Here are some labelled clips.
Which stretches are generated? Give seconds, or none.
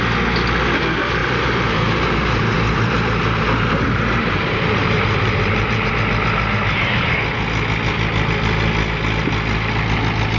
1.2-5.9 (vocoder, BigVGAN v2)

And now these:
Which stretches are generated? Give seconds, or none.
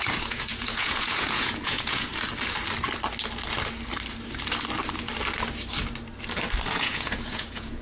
0.0-2.1 (vocoder, Vocos); 6.7-7.8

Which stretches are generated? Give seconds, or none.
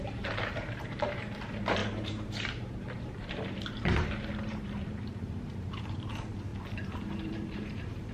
0.0-6.5 (vocoder, BigVGAN v2); 7.1-8.1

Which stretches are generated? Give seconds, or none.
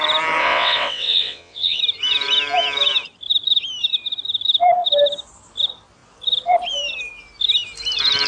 0.4-1.8 (vocoder, WaveNeXt)